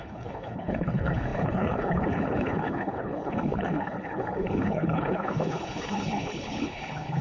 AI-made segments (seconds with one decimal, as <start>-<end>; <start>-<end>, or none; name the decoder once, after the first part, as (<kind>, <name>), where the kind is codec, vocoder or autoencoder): 0.0-7.2 (codec, HILCodec)